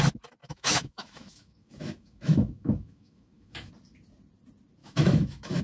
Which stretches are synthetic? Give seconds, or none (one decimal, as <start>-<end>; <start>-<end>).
0.4-3.7; 4.8-5.6